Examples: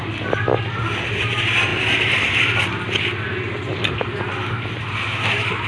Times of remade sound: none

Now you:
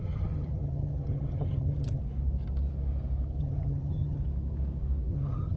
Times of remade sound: 0.0-2.0 (vocoder, HiFi-GAN); 3.4-4.2; 5.1-5.6

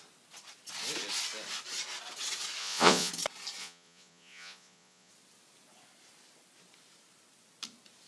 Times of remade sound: 2.6-3.1 (vocoder, Vocos); 3.6-5.1

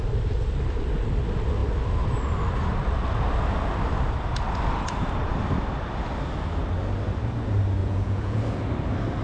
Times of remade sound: 7.8-8.4 (vocoder, Vocos)

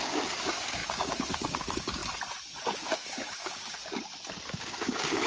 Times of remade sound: 0.0-2.0 (codec, DAC); 2.7-3.8; 4.5-5.3